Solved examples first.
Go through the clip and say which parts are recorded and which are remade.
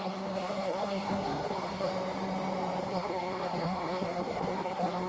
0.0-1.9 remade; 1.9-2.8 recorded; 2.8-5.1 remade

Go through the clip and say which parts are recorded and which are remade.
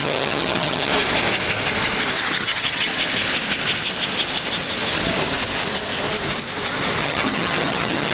0.0-0.9 remade; 0.9-2.4 recorded; 2.4-2.9 remade; 2.9-7.0 recorded; 7.0-8.1 remade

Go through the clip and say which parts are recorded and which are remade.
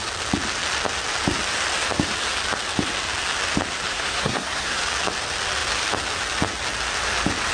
0.0-3.9 recorded; 3.9-4.8 remade; 4.8-7.5 recorded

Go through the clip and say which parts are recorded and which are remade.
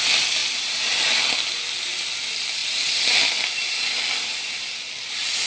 0.0-5.5 recorded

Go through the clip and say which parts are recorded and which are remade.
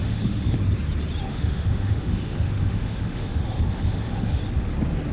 0.0-0.6 remade; 0.6-1.3 recorded; 1.3-4.4 remade; 4.4-5.1 recorded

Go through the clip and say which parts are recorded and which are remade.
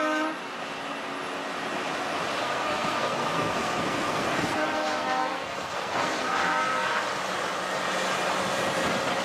0.0-2.4 recorded; 2.4-7.0 remade; 7.0-9.2 recorded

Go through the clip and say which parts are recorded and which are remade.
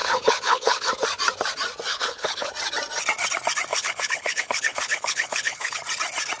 0.0-0.9 remade; 0.9-1.9 recorded; 1.9-2.5 remade; 2.5-3.7 recorded; 3.7-5.8 remade; 5.8-6.4 recorded